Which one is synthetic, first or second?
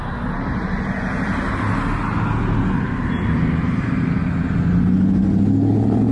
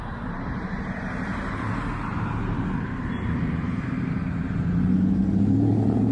second